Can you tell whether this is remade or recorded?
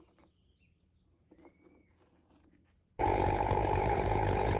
remade